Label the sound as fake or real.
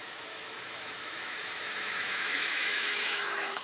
fake